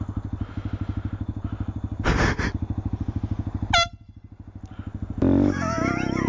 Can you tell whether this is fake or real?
real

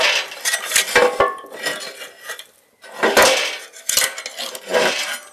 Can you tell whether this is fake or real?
real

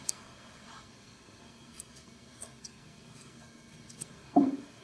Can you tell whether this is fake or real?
fake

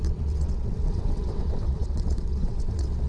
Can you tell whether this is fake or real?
fake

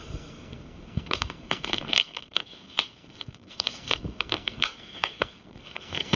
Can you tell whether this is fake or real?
fake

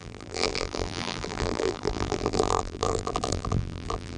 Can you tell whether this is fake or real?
fake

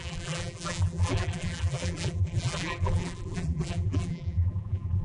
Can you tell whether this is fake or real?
fake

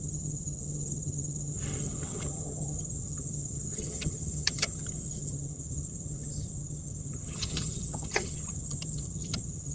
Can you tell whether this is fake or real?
fake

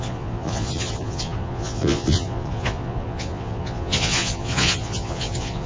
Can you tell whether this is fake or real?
fake